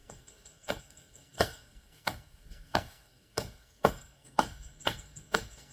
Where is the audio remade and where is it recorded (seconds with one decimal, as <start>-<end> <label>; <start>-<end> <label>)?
0.0-5.7 remade